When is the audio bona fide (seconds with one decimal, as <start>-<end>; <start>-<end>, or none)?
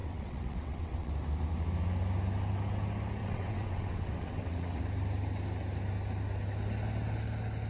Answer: 1.1-3.2; 4.8-7.7